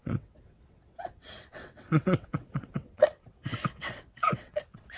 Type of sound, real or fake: fake